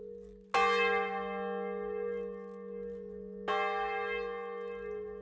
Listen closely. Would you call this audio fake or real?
real